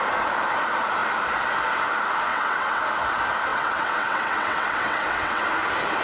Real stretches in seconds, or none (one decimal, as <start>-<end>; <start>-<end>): 0.0-2.3; 2.8-3.5; 5.4-6.0